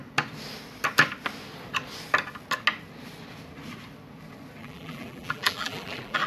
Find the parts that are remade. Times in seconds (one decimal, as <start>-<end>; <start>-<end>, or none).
4.6-6.3